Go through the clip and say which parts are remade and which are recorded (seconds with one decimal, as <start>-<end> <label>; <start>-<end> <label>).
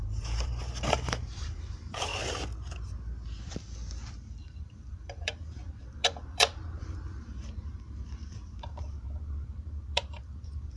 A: 0.0-2.1 remade; 2.1-4.4 recorded; 4.4-10.8 remade